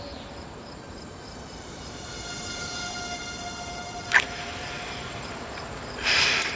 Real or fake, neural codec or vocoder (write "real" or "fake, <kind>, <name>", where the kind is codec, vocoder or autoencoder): fake, vocoder, BigVGAN v2